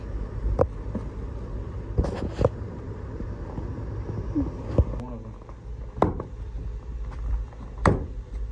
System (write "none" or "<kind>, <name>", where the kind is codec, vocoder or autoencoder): none